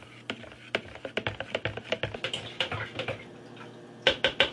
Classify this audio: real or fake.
real